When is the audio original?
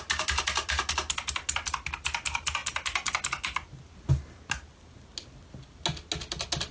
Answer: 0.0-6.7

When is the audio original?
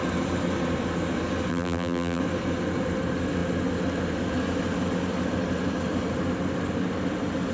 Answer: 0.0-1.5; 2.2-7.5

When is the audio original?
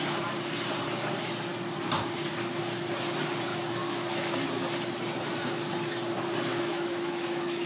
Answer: 0.0-3.5; 4.3-6.5